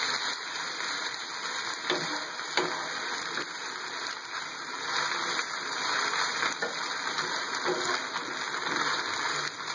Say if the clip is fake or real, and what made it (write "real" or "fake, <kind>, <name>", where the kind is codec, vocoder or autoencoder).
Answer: real